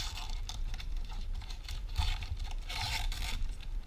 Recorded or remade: remade